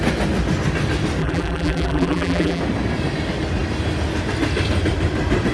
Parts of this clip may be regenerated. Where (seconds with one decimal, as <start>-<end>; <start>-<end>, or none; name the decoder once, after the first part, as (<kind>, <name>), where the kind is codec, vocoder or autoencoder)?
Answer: 1.2-2.6 (vocoder, BigVGAN v2)